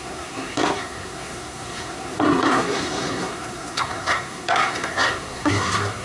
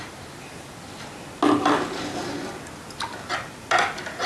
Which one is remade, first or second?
first